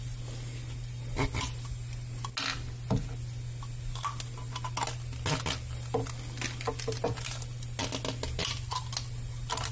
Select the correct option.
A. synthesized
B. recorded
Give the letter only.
B